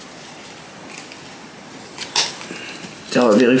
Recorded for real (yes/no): yes